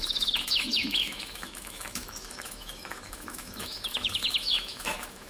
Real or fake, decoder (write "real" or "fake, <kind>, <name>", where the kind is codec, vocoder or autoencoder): fake, autoencoder, DAC-VAE